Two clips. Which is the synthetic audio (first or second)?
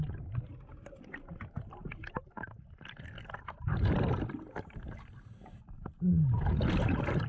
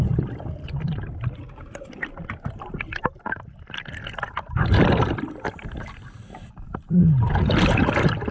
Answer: second